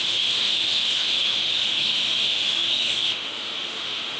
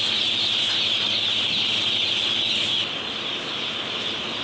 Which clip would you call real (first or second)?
second